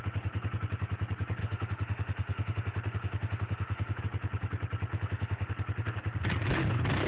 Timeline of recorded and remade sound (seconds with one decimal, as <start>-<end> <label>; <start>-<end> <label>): 0.0-1.4 recorded; 1.4-4.0 remade; 4.0-4.9 recorded; 4.9-5.5 remade; 5.5-7.1 recorded